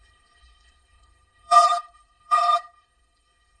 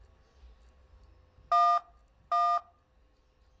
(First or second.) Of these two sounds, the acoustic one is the second